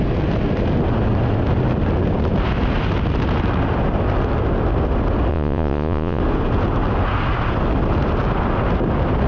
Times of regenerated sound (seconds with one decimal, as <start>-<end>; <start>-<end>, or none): 5.3-6.2